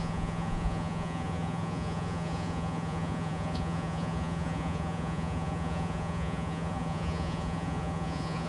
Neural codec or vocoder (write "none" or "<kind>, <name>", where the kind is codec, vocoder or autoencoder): vocoder, Vocos